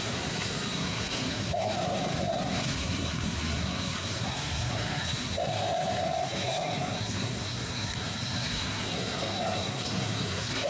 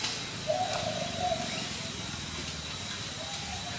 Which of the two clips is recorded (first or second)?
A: second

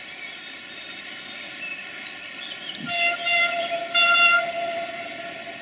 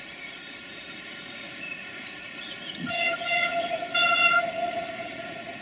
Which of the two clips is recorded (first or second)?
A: first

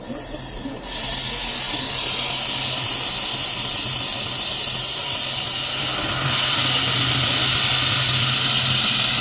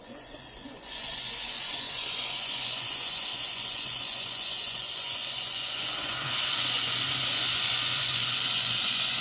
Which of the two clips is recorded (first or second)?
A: first